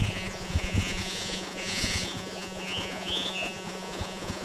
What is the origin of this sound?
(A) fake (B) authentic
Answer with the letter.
A